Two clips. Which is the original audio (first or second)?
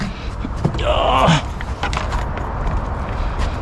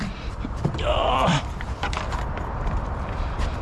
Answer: first